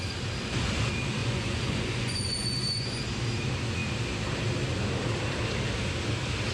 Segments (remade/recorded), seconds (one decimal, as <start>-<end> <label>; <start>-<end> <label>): 0.0-1.2 recorded; 1.2-3.0 remade; 3.0-6.5 recorded